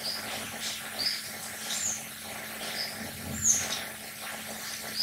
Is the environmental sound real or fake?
real